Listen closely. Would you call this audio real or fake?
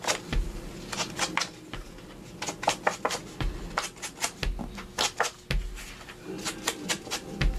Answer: real